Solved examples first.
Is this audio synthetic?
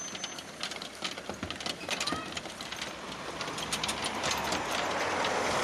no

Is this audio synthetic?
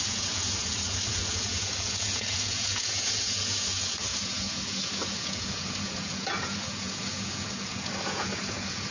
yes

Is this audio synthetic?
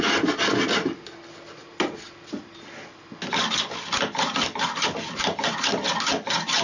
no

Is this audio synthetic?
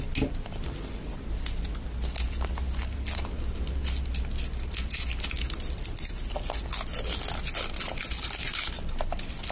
no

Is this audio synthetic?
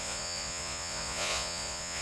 yes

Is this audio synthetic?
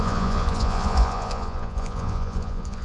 yes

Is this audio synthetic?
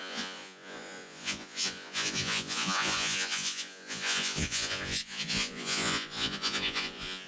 yes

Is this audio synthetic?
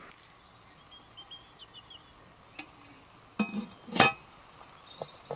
no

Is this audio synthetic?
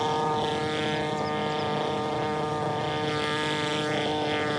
no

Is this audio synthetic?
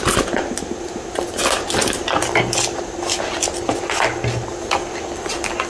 no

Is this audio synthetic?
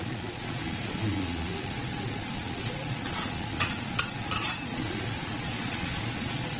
yes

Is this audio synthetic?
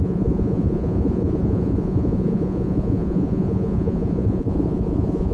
yes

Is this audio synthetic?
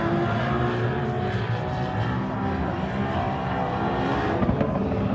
no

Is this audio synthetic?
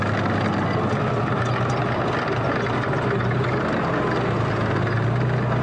no